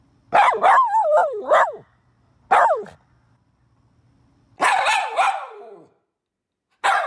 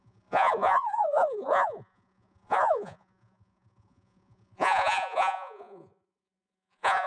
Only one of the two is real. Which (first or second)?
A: first